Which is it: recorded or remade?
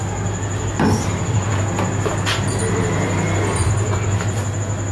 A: recorded